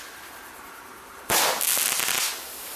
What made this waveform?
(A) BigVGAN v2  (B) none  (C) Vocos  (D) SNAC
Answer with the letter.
B